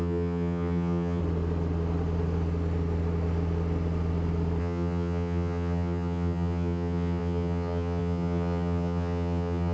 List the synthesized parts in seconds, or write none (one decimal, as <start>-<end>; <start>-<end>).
0.0-1.2; 4.6-9.7